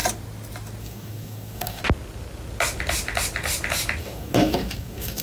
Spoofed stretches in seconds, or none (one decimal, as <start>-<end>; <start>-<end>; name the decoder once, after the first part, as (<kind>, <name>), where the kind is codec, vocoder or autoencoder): 0.8-1.8 (codec, DAC); 4.0-5.2